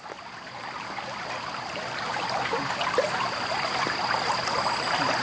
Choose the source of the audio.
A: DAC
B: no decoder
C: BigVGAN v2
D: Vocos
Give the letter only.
B